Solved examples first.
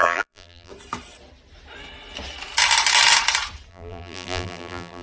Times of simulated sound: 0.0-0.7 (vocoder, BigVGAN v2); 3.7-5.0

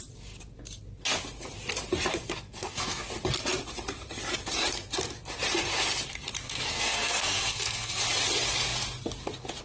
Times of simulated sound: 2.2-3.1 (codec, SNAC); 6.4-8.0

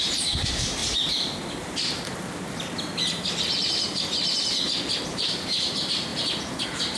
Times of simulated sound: 0.0-0.8 (vocoder, BigVGAN v2); 5.0-7.0